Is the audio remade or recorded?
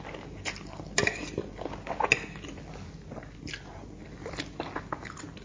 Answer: recorded